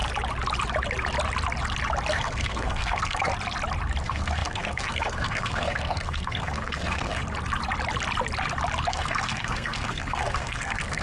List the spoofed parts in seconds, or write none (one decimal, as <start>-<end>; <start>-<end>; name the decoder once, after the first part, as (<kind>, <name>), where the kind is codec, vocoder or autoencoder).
2.1-3.3 (codec, SNAC); 4.0-7.2; 8.9-11.0